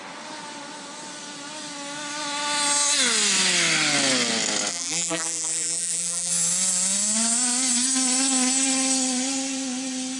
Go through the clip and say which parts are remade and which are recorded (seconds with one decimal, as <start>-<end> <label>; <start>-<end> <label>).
0.0-4.7 recorded; 4.7-6.3 remade; 6.3-10.2 recorded